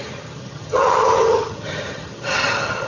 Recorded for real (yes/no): no